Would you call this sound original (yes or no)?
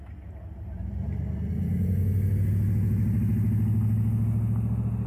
yes